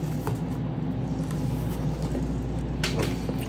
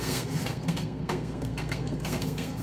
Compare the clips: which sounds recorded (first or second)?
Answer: first